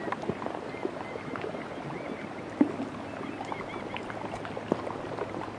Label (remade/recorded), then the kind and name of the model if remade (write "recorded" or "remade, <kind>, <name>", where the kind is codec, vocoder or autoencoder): recorded